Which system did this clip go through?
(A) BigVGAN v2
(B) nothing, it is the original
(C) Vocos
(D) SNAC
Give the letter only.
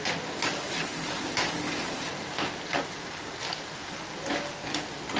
B